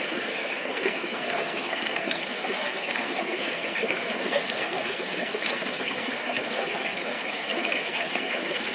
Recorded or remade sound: remade